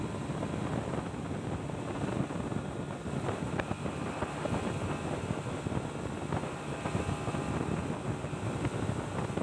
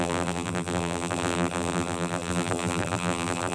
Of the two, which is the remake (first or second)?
second